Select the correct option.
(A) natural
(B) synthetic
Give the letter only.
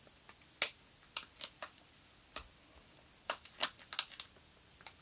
A